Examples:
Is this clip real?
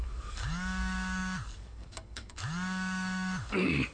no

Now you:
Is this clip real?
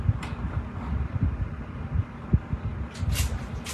yes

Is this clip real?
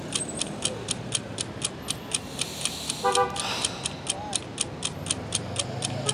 yes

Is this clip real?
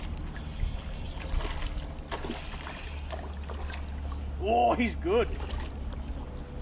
yes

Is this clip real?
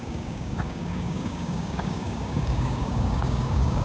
no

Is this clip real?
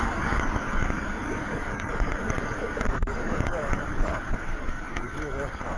no